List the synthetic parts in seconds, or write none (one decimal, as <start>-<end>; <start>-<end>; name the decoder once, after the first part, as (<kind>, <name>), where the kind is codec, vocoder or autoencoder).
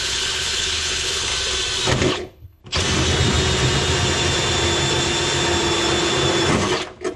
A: 0.0-1.3 (codec, HILCodec); 2.1-2.6